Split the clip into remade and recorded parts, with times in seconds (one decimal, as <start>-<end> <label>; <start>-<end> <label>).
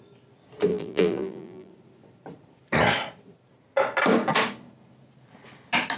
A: 0.0-0.7 recorded; 0.7-1.7 remade; 1.7-6.0 recorded